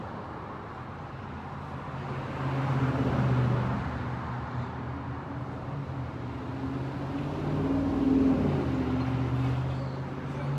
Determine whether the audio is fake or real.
real